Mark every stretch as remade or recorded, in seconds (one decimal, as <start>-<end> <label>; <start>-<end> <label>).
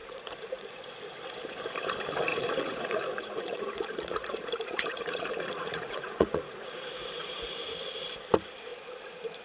0.0-0.8 remade; 0.8-2.3 recorded; 2.3-7.5 remade; 7.5-9.4 recorded